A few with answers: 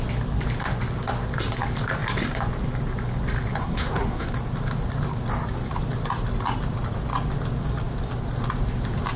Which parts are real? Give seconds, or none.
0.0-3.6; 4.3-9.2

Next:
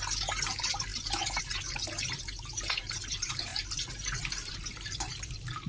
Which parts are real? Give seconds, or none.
none